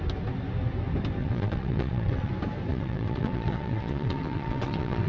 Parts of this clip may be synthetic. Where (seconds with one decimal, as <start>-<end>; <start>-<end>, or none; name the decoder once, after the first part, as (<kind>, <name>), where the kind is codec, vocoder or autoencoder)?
1.2-2.3 (vocoder, WaveNeXt); 2.7-5.1